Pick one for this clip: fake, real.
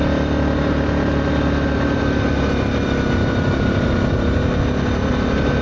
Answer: real